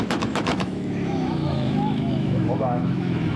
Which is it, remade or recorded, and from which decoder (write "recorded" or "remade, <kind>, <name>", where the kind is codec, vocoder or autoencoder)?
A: remade, autoencoder, DAC-VAE